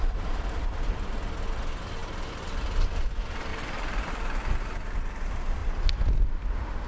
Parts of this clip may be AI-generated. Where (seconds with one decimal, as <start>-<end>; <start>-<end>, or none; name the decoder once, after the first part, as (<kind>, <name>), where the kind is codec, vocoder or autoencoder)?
0.0-0.6 (vocoder, BigVGAN v2); 3.5-4.1